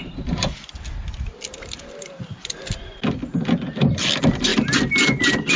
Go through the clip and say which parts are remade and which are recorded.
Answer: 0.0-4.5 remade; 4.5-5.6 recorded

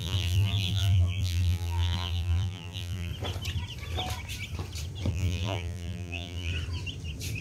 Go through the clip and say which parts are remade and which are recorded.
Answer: 0.0-3.1 remade; 3.1-5.1 recorded; 5.1-6.5 remade; 6.5-7.4 recorded

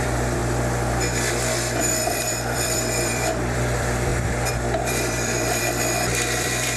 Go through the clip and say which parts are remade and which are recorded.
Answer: 0.0-0.4 remade; 0.4-1.8 recorded; 1.8-4.1 remade; 4.1-4.8 recorded; 4.8-6.8 remade

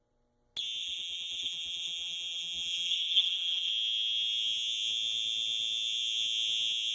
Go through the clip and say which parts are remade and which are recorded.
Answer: 0.0-0.8 recorded; 0.8-3.7 remade; 3.7-6.9 recorded